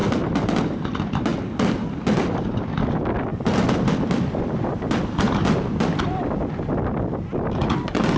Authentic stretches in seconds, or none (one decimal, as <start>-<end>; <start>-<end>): 0.0-1.3; 1.8-3.3; 6.5-8.2